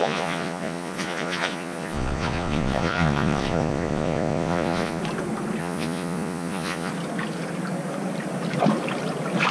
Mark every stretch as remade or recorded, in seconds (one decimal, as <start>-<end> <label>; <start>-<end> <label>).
0.0-5.0 remade; 5.0-5.6 recorded; 5.6-6.9 remade; 6.9-9.5 recorded

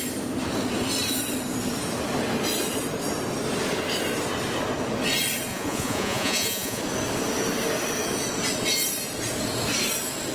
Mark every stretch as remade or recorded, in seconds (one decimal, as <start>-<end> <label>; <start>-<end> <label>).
0.0-5.5 recorded; 5.5-6.8 remade; 6.8-10.3 recorded

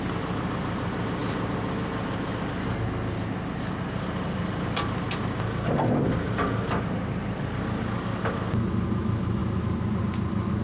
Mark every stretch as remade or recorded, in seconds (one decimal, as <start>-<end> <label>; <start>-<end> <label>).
0.0-10.6 recorded

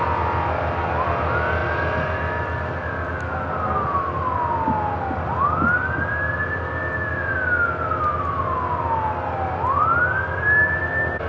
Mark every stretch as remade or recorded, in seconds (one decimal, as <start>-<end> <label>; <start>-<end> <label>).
0.0-11.3 recorded